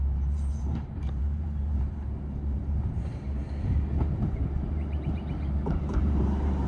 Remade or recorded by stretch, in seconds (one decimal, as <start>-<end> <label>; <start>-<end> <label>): 0.0-3.4 remade; 3.4-4.1 recorded; 4.1-6.7 remade